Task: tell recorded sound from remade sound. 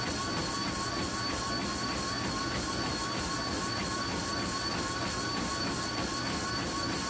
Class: recorded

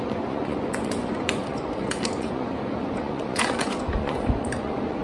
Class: remade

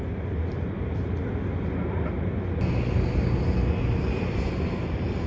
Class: recorded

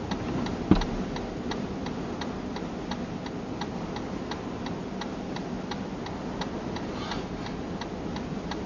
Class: recorded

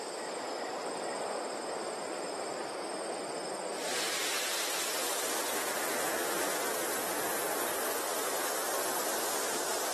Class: recorded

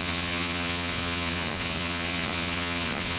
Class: remade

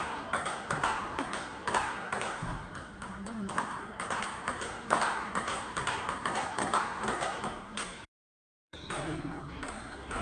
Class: remade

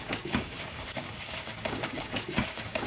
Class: remade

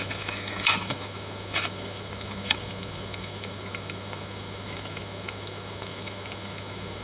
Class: remade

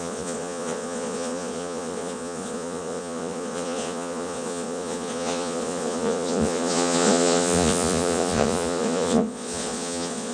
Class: remade